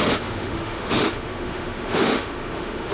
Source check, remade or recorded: remade